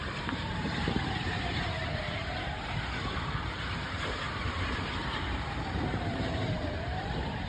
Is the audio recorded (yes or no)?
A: no